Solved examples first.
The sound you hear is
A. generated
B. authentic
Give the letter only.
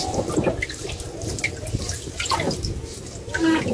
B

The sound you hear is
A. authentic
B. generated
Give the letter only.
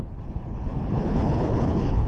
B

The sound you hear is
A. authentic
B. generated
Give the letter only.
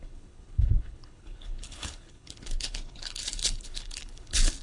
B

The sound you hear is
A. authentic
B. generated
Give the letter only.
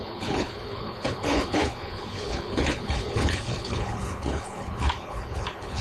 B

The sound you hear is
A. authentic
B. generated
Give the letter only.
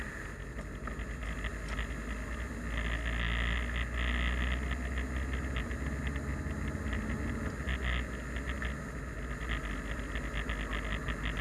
A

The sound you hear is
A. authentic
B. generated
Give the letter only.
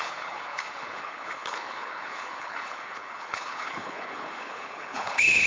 B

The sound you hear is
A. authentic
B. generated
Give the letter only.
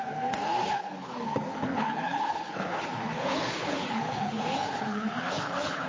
B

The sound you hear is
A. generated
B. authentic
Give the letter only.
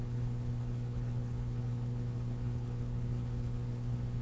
A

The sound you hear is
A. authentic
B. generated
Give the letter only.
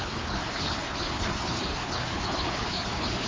B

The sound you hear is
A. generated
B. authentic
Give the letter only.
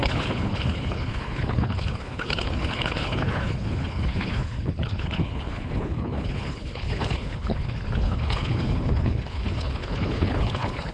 A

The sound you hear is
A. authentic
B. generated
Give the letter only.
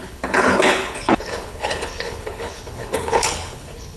B